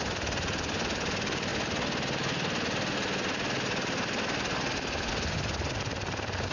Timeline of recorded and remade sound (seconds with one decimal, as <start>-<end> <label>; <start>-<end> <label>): 0.0-6.5 recorded